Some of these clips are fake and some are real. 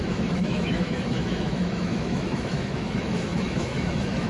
fake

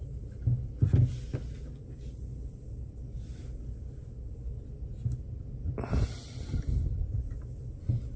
real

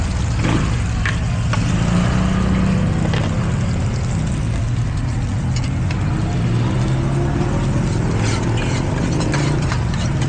real